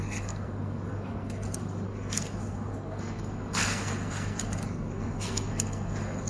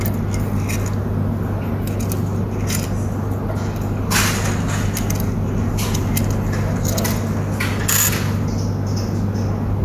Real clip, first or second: second